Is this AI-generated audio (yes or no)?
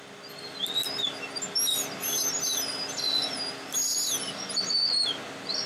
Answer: no